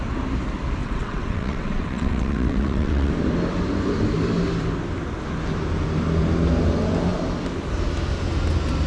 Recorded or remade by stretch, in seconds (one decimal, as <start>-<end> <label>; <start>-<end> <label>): 0.0-0.8 recorded; 0.8-3.1 remade; 3.1-8.9 recorded